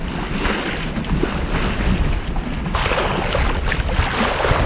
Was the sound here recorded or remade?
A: recorded